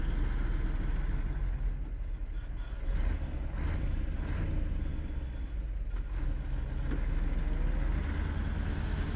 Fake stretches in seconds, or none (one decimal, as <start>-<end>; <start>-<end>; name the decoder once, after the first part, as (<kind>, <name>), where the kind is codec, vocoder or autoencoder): none